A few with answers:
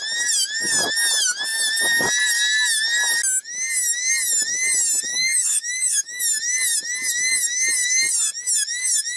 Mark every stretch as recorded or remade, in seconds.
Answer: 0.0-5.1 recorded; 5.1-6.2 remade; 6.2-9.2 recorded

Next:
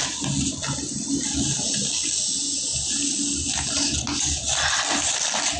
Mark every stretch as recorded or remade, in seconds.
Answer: 0.0-5.6 recorded

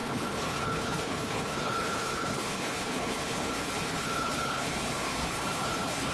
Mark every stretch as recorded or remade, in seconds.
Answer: 0.0-6.1 remade

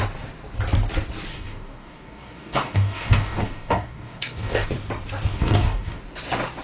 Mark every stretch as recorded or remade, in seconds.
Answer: 0.0-1.3 recorded; 1.3-4.7 remade; 4.7-5.3 recorded; 5.3-6.0 remade; 6.0-6.6 recorded

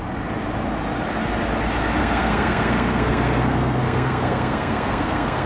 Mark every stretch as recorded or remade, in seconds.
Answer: 0.0-2.0 recorded; 2.0-5.5 remade

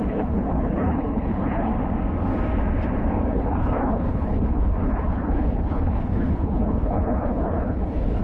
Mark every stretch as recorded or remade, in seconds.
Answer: 0.0-1.7 remade; 1.7-3.3 recorded; 3.3-8.2 remade